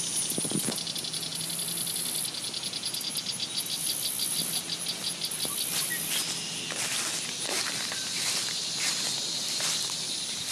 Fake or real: real